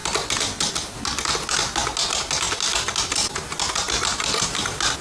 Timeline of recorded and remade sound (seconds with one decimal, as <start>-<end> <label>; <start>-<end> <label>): 0.0-5.0 recorded

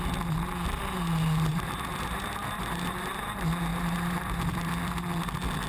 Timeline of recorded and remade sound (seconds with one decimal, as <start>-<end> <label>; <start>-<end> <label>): 0.0-1.5 recorded; 1.5-3.1 remade; 3.1-3.7 recorded; 3.7-4.7 remade; 4.7-5.7 recorded